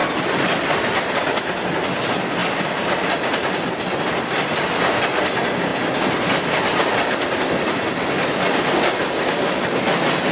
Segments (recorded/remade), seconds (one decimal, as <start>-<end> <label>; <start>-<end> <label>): 0.0-10.3 recorded